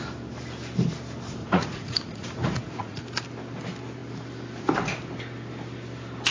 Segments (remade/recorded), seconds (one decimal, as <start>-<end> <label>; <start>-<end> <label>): 0.0-1.4 recorded; 1.4-3.0 remade; 3.0-6.3 recorded

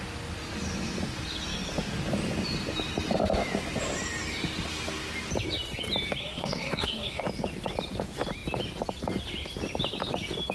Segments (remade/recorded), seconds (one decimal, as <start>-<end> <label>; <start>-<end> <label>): 0.0-6.2 recorded; 6.2-7.2 remade; 7.2-10.5 recorded

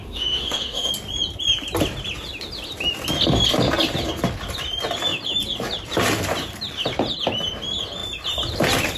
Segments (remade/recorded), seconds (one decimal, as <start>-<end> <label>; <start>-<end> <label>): 0.0-0.9 remade; 0.9-9.0 recorded

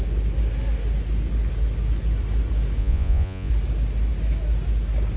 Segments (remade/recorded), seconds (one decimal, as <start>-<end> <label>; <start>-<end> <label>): 0.0-2.8 recorded; 2.8-3.5 remade; 3.5-5.2 recorded

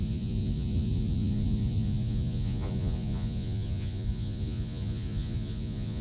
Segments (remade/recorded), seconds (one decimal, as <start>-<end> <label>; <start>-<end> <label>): 0.0-6.0 remade